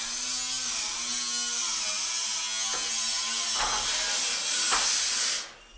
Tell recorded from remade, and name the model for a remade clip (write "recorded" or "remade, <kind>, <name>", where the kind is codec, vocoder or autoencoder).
recorded